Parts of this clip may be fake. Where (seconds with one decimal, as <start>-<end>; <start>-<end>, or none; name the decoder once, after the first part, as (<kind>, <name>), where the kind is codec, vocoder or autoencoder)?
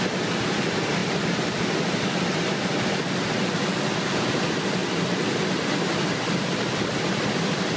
none